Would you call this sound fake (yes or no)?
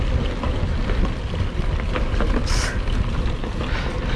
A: no